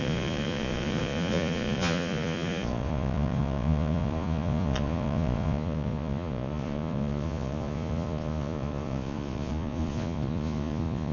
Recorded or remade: remade